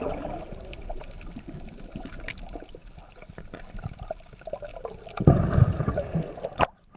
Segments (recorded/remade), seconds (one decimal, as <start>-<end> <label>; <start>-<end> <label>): 0.0-4.7 remade; 4.7-7.0 recorded